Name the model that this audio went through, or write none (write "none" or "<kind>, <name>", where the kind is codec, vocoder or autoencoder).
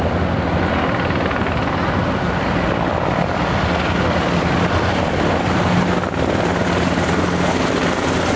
none